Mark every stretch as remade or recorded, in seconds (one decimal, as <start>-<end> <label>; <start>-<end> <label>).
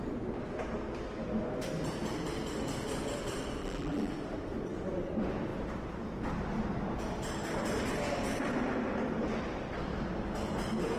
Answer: 0.0-3.6 recorded; 3.6-4.1 remade; 4.1-11.0 recorded